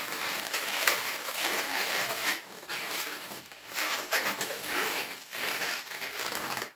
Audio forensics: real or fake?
fake